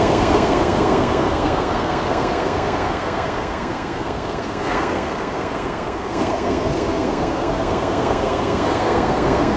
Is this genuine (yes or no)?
no